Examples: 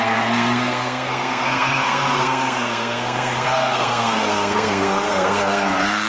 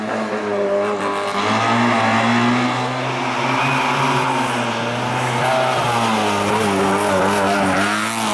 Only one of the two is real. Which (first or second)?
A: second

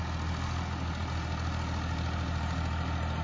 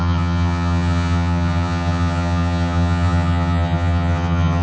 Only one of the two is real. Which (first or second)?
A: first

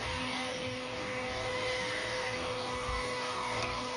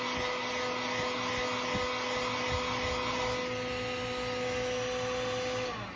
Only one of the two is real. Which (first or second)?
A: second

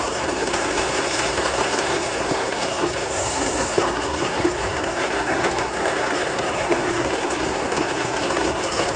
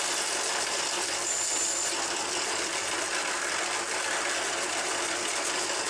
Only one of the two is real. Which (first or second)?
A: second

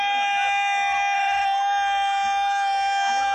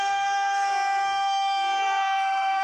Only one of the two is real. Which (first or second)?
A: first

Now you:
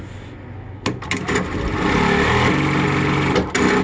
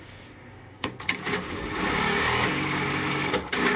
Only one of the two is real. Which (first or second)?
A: first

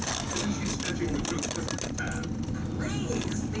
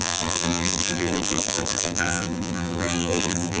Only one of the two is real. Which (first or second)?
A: first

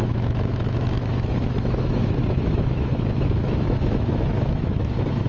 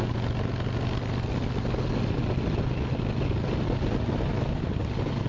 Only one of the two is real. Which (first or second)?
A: second